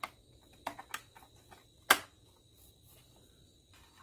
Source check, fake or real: real